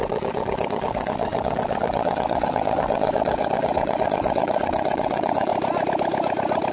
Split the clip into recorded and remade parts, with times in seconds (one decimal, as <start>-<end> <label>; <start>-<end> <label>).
0.0-5.5 remade; 5.5-6.7 recorded